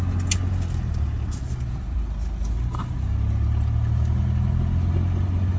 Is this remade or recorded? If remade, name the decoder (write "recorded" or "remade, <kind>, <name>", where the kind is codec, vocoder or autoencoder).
recorded